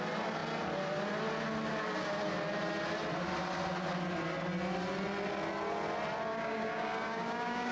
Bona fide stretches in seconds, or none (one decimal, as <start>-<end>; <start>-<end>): 0.0-6.3